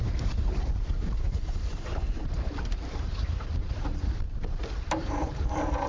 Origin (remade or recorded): remade